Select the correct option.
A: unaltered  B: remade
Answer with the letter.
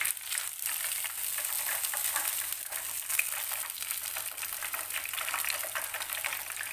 A